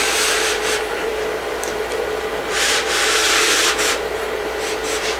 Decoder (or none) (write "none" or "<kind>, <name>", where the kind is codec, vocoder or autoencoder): vocoder, BigVGAN v2